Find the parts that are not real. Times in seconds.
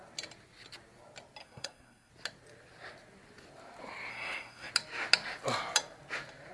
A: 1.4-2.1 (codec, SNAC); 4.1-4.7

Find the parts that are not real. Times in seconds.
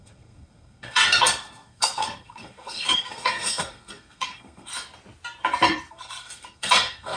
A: 0.0-4.7 (codec, SNAC); 5.9-7.2